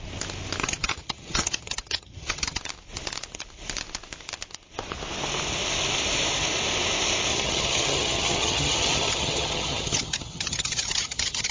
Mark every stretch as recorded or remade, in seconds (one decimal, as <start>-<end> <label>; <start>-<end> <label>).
0.0-0.6 recorded; 0.6-2.6 remade; 2.6-7.3 recorded; 7.3-11.5 remade